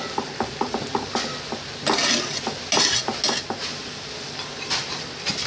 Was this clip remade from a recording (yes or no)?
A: no